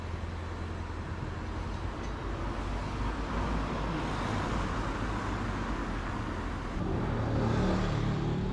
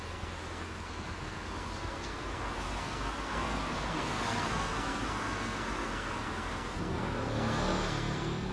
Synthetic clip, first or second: second